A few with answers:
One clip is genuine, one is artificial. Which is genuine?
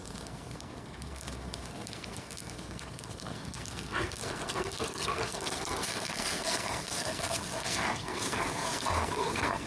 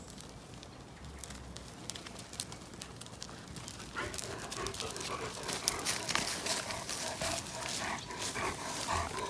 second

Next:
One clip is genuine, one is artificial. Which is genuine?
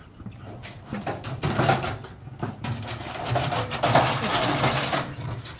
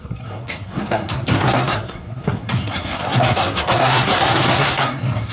first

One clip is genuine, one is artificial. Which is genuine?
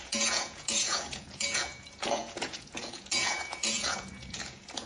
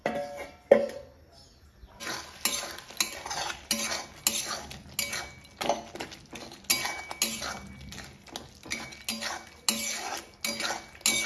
second